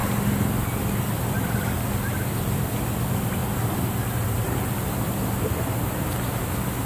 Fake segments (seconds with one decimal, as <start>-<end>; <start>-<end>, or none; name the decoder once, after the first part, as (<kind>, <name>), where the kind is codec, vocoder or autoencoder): 0.0-1.1 (vocoder, BigVGAN v2)